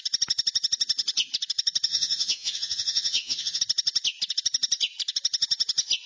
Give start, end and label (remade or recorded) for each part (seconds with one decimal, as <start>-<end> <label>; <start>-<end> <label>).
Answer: 0.0-1.9 recorded; 1.9-3.6 remade; 3.6-6.1 recorded

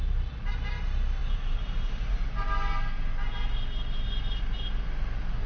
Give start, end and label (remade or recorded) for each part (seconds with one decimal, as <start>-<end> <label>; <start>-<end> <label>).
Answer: 0.0-5.5 recorded

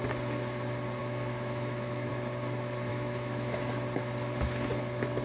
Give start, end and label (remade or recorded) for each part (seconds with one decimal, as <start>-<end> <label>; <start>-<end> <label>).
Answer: 0.0-1.0 recorded; 1.0-2.1 remade; 2.1-2.9 recorded; 2.9-3.6 remade; 3.6-5.2 recorded

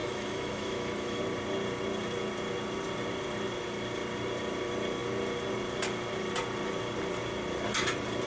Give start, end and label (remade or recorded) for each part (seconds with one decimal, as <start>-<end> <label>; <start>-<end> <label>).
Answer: 0.0-1.2 remade; 1.2-8.3 recorded

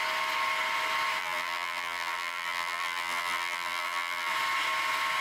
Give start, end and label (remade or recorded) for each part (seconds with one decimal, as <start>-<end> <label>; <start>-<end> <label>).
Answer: 0.0-1.2 recorded; 1.2-4.3 remade; 4.3-5.2 recorded

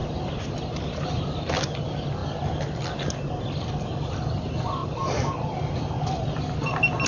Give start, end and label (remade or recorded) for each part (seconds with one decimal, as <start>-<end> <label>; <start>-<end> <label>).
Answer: 0.0-7.1 recorded

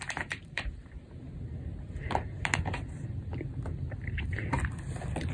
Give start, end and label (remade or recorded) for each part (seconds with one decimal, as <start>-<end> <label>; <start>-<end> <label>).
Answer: 0.0-0.4 recorded; 0.4-3.6 remade; 3.6-5.3 recorded